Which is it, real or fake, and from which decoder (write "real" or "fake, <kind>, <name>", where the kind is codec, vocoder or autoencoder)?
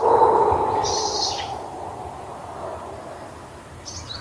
real